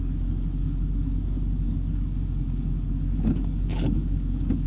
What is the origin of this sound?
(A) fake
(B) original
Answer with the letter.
A